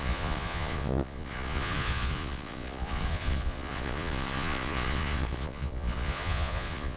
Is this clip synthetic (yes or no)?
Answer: yes